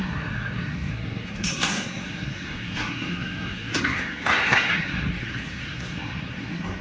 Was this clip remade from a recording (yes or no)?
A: yes